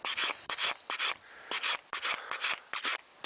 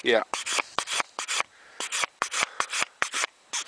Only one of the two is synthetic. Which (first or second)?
second